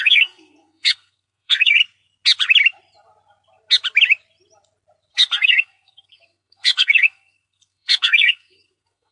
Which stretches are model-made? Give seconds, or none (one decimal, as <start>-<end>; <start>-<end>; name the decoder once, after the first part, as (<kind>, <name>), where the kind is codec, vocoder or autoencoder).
0.0-1.8 (codec, SNAC); 5.1-9.1

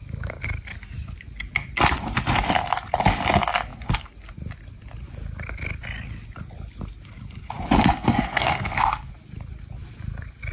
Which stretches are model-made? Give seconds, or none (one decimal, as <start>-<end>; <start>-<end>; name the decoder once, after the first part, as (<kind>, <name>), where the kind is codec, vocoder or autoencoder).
7.9-9.1 (codec, SNAC)

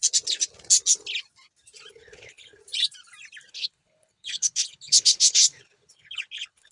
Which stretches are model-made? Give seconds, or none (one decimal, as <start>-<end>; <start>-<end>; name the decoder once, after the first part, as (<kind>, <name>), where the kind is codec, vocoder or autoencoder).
1.9-2.6 (codec, HILCodec); 3.5-6.7

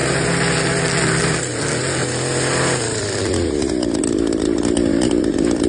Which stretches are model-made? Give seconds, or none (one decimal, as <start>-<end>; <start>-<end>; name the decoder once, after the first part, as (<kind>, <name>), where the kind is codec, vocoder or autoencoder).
0.0-0.6 (vocoder, BigVGAN v2); 2.0-5.7

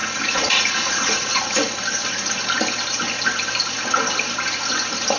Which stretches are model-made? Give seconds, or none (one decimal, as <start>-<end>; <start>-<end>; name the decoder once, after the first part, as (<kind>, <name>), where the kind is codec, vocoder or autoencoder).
0.0-1.4 (vocoder, Vocos)

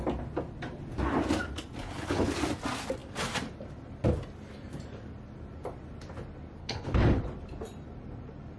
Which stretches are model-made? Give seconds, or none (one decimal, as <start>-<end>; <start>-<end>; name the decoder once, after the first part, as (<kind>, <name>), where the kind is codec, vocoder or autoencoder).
1.8-2.3 (codec, HILCodec); 6.6-7.2

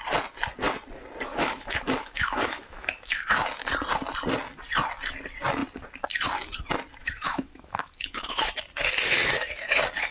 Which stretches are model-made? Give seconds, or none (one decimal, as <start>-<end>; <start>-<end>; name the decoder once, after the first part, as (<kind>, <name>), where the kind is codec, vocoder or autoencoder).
1.3-3.3 (autoencoder, DAC-VAE); 7.0-8.5

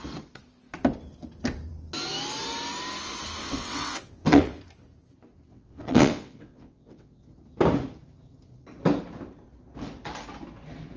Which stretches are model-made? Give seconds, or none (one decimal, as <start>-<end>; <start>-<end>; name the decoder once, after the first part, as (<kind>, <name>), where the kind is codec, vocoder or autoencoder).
3.4-4.6 (vocoder, WaveNeXt); 5.5-7.3